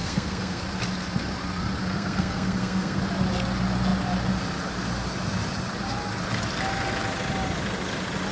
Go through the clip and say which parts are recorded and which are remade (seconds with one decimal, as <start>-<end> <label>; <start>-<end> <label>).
0.0-0.6 remade; 0.6-1.8 recorded; 1.8-3.0 remade; 3.0-8.3 recorded